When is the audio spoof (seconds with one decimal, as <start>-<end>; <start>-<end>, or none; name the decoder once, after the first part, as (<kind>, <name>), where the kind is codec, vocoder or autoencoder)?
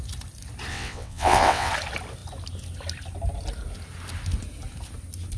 0.7-1.7 (vocoder, WaveNeXt)